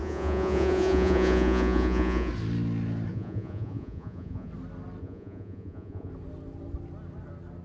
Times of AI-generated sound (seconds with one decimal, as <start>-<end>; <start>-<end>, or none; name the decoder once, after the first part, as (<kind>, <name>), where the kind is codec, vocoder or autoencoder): 0.0-2.3 (vocoder, Vocos); 3.1-4.5; 5.0-6.1